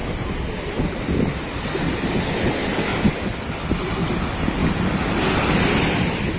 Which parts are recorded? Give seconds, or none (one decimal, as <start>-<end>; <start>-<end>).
0.8-2.9; 3.8-4.6; 5.3-6.4